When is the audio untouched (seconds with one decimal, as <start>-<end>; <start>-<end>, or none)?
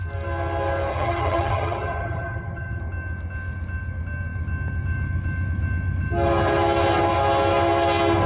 0.0-0.9; 2.8-8.3